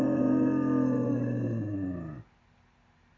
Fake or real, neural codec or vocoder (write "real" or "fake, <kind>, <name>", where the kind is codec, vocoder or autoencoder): real